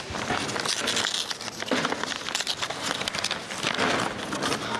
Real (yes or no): yes